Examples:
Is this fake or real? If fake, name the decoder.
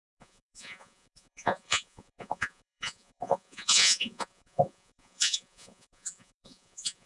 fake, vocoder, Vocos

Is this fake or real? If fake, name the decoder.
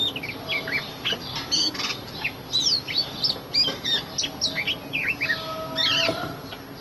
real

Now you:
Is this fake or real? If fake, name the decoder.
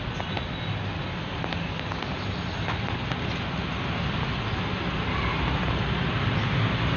real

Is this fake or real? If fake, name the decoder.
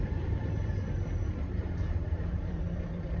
fake, vocoder, BigVGAN v2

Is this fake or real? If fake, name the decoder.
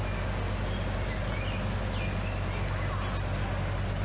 real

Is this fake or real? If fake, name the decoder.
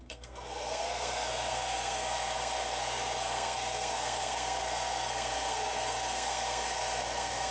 fake, codec, SNAC